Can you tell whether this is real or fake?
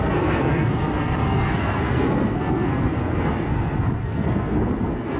fake